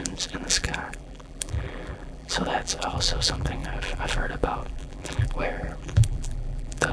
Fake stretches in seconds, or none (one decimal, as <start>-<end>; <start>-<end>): 0.0-6.9